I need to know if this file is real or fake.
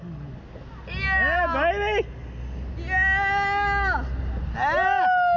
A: real